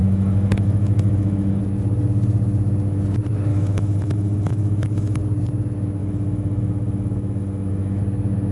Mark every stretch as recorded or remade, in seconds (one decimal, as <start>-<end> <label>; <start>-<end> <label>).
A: 0.0-1.6 remade; 1.6-3.5 recorded; 3.5-5.2 remade; 5.2-6.0 recorded; 6.0-8.0 remade; 8.0-8.5 recorded